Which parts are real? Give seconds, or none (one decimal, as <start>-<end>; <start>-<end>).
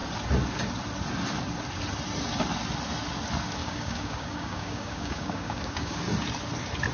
0.0-3.6; 6.0-6.9